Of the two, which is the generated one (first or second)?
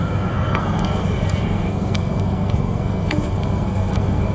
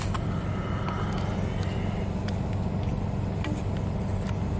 first